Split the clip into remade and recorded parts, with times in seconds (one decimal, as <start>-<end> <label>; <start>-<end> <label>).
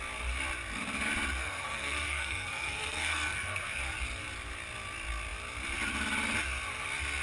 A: 0.0-1.4 recorded; 1.4-3.8 remade; 3.8-7.2 recorded